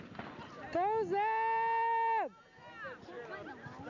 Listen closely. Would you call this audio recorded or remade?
recorded